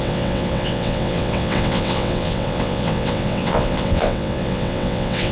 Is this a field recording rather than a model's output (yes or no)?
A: no